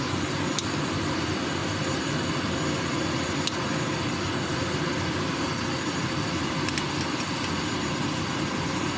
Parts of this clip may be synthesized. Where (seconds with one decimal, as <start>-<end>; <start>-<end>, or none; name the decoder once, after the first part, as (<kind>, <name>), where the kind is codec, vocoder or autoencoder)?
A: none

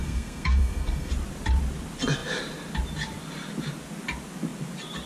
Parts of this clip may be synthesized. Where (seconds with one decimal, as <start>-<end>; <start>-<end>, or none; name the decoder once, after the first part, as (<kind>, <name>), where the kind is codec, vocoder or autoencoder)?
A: 0.0-1.1 (codec, SNAC)

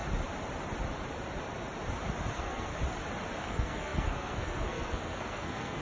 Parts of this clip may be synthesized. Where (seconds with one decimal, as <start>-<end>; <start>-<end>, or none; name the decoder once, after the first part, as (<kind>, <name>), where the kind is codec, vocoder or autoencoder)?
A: 2.3-2.7 (codec, SNAC); 3.4-5.8